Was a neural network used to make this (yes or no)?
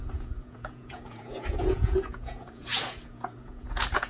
yes